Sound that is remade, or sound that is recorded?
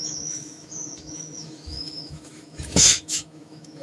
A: remade